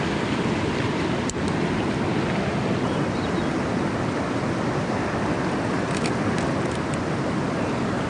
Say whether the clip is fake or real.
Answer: real